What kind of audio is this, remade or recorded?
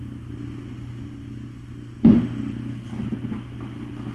recorded